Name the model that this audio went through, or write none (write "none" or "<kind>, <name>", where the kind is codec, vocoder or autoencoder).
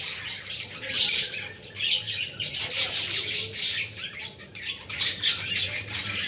vocoder, BigVGAN v2